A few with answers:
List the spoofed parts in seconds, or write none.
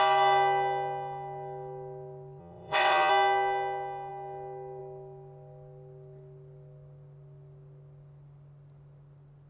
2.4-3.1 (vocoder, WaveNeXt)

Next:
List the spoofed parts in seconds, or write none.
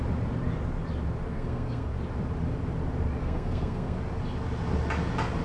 1.3-1.9 (codec, SNAC); 3.2-4.0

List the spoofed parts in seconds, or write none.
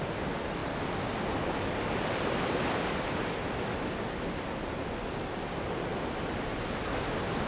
none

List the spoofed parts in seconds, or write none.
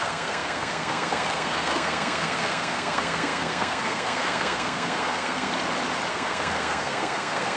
0.0-5.5 (codec, SNAC); 6.1-7.6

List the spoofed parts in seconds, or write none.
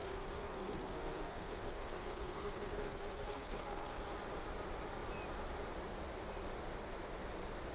0.0-4.0 (codec, SNAC)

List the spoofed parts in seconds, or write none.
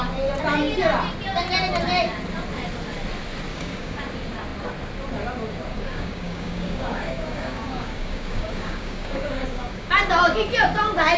3.5-4.0 (codec, DAC); 5.7-9.9